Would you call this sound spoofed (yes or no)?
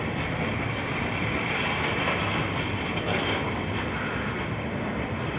no